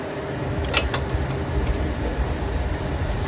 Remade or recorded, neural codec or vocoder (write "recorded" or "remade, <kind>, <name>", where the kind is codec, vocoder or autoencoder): recorded